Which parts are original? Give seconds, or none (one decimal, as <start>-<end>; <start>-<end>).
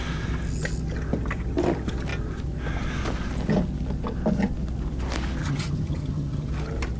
0.0-5.4; 6.5-7.0